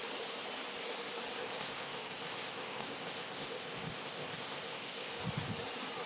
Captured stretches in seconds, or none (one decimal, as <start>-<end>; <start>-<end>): 0.0-1.4; 5.1-6.1